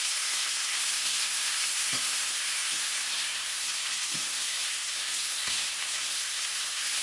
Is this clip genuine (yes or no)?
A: no